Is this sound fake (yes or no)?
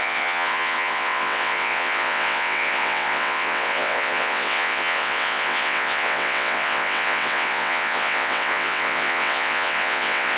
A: yes